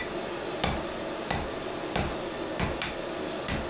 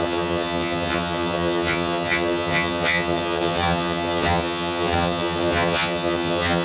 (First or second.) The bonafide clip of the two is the first